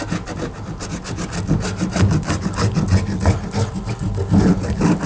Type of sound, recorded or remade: recorded